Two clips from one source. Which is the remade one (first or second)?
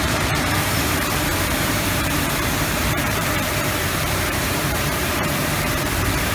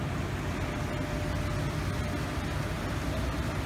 first